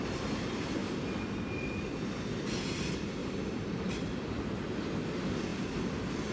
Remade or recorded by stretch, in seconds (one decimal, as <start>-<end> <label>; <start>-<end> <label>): 0.0-3.2 recorded; 3.2-4.9 remade; 4.9-6.3 recorded